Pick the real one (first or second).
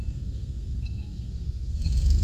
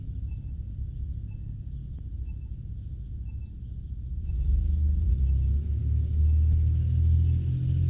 second